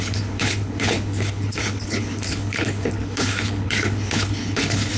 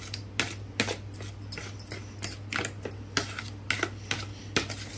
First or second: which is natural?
second